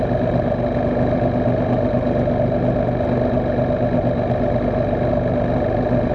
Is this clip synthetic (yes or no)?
no